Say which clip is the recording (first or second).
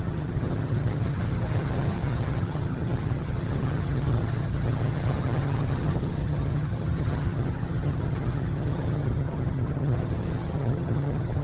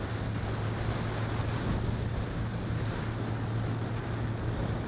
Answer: second